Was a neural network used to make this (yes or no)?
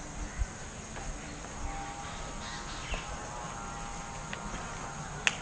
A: no